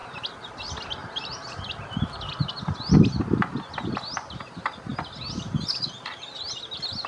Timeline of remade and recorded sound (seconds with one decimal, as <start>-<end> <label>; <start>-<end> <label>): 0.0-1.0 recorded; 1.0-2.5 remade; 2.5-7.1 recorded

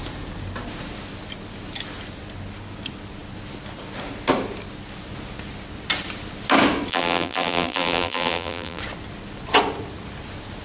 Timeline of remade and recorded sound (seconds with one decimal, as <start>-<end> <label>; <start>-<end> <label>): 0.0-6.9 recorded; 6.9-8.8 remade; 8.8-10.6 recorded

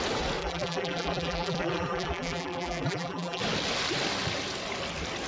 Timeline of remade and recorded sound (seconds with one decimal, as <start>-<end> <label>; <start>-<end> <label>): 0.0-0.4 recorded; 0.4-3.4 remade; 3.4-5.3 recorded

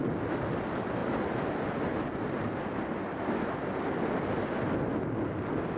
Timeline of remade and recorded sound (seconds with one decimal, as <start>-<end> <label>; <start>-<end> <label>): 0.0-5.8 recorded

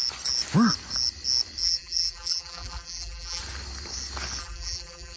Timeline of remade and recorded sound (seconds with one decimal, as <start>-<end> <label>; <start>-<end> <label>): 0.0-1.6 recorded; 1.6-3.4 remade; 3.4-4.4 recorded; 4.4-5.2 remade

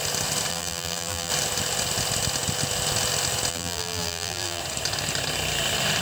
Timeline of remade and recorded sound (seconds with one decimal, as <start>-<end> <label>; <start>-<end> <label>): 0.0-0.5 recorded; 0.5-1.3 remade; 1.3-3.5 recorded; 3.5-4.6 remade; 4.6-6.0 recorded

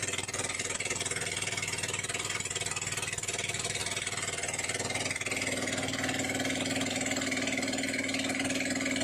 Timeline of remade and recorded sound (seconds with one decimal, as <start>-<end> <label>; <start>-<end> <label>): 0.0-3.8 remade; 3.8-6.9 recorded; 6.9-9.0 remade